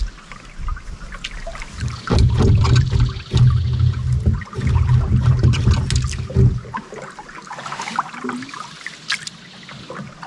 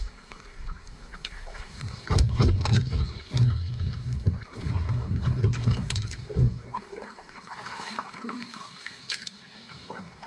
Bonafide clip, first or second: first